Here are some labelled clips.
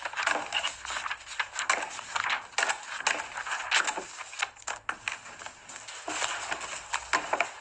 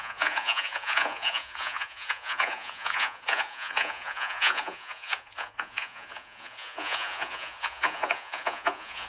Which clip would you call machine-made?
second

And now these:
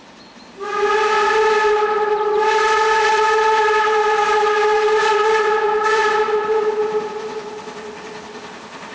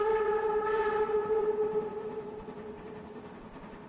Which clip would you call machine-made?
second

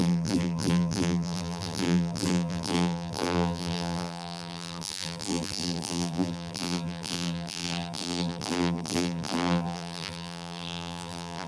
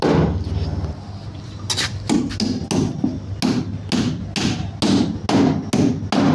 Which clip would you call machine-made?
first